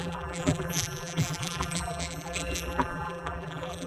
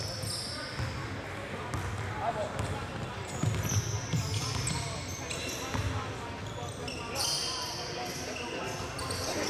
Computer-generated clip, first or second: first